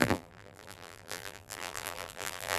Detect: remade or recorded remade